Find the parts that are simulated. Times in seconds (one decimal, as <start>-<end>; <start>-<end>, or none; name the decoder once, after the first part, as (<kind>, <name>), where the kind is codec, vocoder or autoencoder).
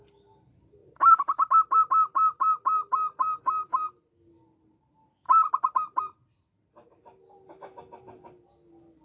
none